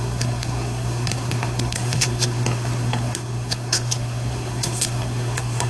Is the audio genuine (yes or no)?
no